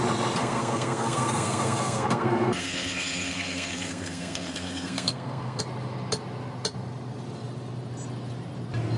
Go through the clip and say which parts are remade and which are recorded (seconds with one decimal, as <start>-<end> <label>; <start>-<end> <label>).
0.0-0.4 recorded; 0.4-5.6 remade; 5.6-9.0 recorded